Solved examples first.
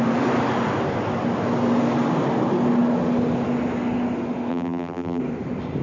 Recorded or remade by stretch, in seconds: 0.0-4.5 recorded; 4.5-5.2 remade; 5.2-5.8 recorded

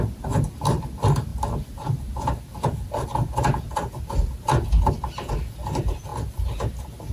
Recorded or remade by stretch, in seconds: 0.0-7.1 recorded

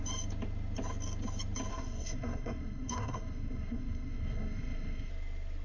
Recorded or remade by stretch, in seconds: 0.0-1.7 recorded; 1.7-5.1 remade; 5.1-5.6 recorded

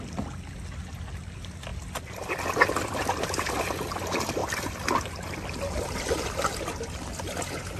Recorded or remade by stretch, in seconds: 0.0-1.7 recorded; 1.7-3.5 remade; 3.5-7.8 recorded